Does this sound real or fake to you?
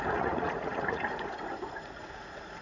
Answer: fake